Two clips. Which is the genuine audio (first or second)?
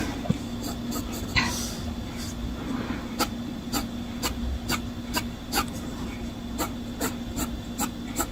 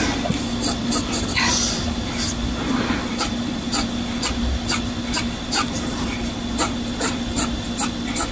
first